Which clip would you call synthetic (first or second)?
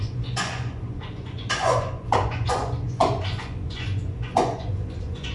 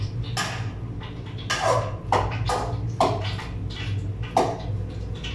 first